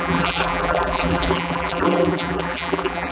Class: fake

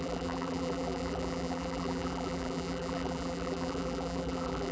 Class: fake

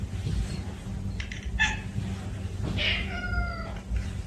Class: real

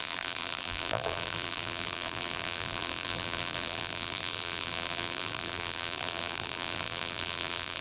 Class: fake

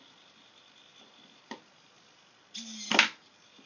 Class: real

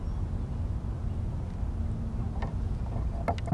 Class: real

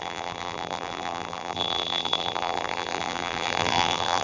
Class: fake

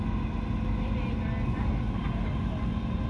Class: real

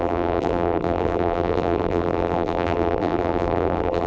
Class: fake